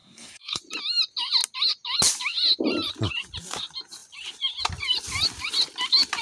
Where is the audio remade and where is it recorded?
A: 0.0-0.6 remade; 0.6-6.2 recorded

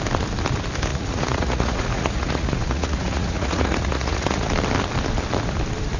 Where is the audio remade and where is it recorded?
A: 0.0-0.9 recorded; 0.9-4.5 remade; 4.5-6.0 recorded

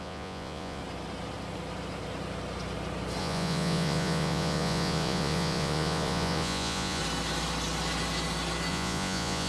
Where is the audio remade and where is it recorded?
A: 0.0-0.8 remade; 0.8-3.2 recorded; 3.2-7.0 remade; 7.0-8.7 recorded; 8.7-9.5 remade

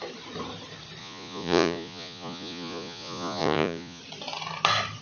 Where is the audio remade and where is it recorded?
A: 0.0-1.0 recorded; 1.0-4.0 remade; 4.0-5.0 recorded